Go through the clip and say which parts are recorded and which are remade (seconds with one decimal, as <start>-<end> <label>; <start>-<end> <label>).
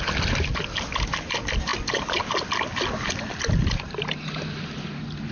0.0-5.3 recorded